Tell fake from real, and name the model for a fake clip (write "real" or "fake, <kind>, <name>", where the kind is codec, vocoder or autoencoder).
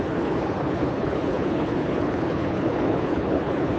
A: fake, codec, HILCodec